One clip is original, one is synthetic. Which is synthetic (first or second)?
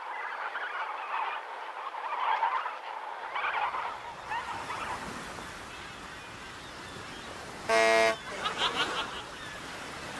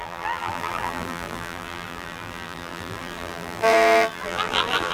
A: second